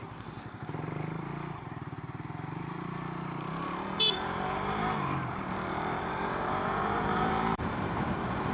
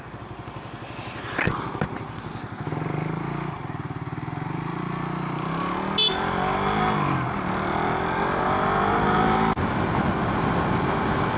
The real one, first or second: second